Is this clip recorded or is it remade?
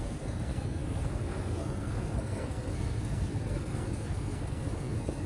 remade